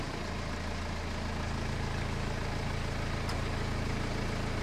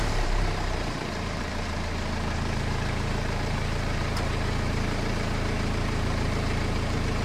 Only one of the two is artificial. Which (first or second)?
second